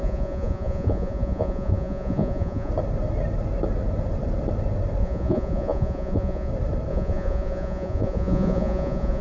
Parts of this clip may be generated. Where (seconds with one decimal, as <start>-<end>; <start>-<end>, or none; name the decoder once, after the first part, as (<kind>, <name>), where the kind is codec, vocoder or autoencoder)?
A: 0.0-2.7 (vocoder, Vocos); 5.0-6.5; 6.9-9.2

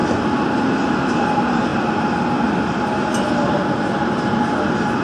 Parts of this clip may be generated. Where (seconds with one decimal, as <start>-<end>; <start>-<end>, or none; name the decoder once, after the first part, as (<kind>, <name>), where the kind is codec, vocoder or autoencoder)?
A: none

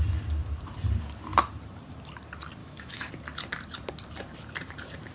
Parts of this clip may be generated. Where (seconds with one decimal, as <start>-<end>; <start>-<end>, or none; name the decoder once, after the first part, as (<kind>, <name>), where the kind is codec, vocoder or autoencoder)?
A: 2.6-3.1 (autoencoder, DAC-VAE)

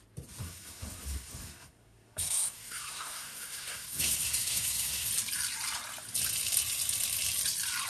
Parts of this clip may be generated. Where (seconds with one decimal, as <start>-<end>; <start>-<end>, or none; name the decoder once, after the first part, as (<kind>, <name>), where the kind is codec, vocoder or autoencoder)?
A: 0.4-5.1 (codec, SNAC)

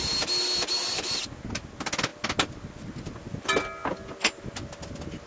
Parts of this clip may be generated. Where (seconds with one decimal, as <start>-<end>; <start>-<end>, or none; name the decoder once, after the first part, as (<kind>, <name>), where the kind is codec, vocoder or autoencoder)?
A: none